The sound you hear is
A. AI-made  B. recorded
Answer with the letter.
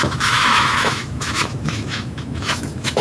A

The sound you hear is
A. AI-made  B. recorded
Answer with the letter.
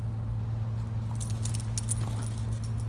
B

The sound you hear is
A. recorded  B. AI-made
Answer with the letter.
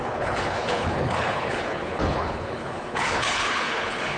B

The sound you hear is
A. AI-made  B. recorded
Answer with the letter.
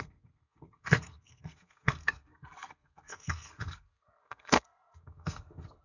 A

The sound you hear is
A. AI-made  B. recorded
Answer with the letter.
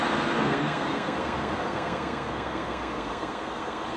A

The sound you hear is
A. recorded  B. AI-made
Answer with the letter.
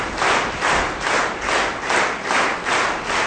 A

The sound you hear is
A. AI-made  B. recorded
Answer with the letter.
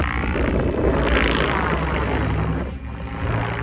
B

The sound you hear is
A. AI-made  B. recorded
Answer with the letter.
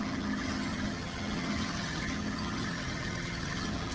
A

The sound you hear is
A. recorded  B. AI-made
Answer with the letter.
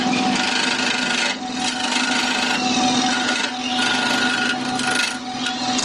A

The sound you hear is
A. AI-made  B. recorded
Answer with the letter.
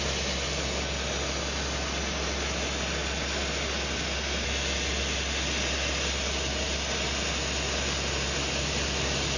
B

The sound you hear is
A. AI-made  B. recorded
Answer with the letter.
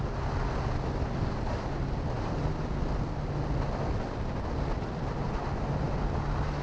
B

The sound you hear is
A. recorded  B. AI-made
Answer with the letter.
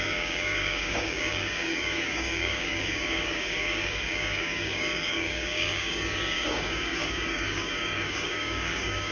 B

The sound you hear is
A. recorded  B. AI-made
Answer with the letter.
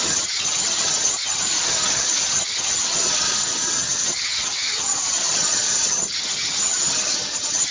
B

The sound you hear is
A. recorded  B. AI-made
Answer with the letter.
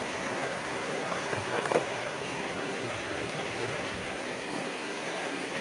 B